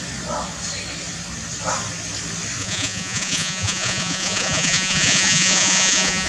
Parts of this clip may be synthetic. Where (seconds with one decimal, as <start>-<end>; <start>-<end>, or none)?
2.6-6.3